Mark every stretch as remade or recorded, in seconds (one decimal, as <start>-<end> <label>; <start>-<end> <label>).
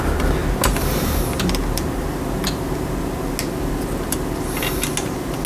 0.0-5.5 recorded